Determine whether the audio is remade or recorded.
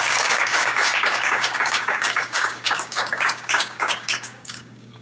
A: remade